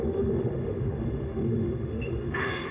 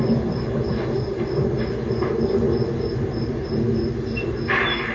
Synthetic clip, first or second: first